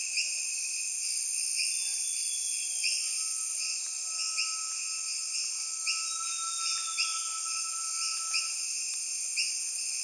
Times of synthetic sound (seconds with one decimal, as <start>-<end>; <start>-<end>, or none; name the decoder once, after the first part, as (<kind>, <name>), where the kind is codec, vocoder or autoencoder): none